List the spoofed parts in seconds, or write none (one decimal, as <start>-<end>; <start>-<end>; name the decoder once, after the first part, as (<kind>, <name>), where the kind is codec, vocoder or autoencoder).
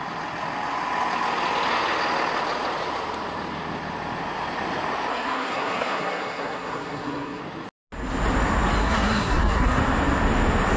5.1-7.4 (codec, SNAC); 8.8-9.8